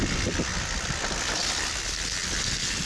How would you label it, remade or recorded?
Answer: recorded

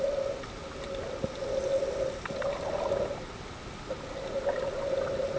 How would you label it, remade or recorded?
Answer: recorded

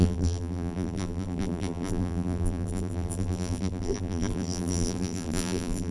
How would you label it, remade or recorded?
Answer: remade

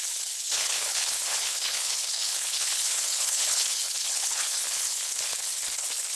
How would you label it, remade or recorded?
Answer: remade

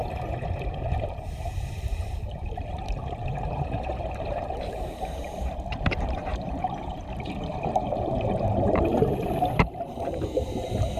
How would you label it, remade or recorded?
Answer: remade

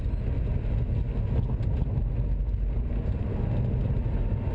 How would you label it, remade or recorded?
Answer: recorded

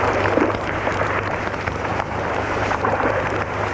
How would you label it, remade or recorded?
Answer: remade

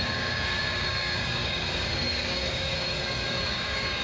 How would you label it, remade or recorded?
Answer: remade